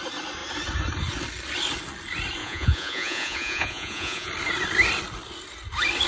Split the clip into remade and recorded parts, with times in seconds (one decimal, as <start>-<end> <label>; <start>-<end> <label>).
0.0-2.4 recorded; 2.4-4.3 remade; 4.3-6.1 recorded